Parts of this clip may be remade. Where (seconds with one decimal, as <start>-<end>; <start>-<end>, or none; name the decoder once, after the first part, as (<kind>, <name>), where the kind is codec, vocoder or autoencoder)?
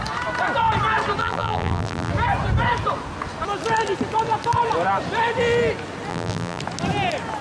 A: 1.2-2.1 (vocoder, BigVGAN v2); 6.1-6.6